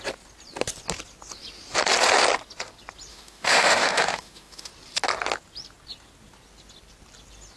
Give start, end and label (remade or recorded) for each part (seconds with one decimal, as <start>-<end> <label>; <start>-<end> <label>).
0.0-3.1 recorded; 3.1-4.7 remade; 4.7-7.6 recorded